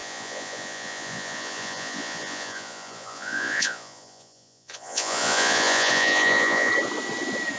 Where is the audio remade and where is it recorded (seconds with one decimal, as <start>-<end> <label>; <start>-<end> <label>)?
0.0-6.7 remade; 6.7-7.6 recorded